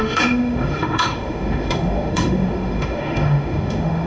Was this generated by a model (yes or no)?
yes